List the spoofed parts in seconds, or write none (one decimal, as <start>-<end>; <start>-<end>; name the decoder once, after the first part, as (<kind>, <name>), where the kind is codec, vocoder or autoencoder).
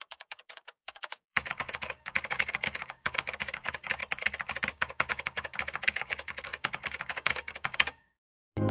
0.0-4.0 (codec, DAC); 4.7-8.7